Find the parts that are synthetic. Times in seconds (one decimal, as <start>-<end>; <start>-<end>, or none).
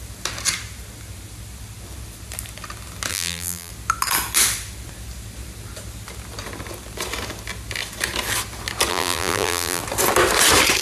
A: 3.1-3.7; 8.9-9.8